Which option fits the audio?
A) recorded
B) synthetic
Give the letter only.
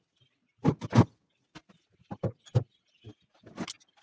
A